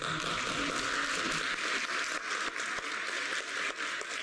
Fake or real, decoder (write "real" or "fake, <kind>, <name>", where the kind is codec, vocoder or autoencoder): real